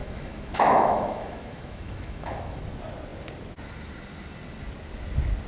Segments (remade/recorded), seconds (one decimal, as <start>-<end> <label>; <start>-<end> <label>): 0.0-2.6 remade; 2.6-5.5 recorded